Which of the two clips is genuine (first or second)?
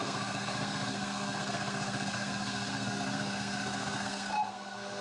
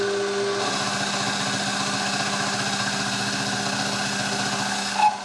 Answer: second